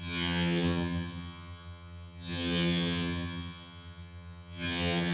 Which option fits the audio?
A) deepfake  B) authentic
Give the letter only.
A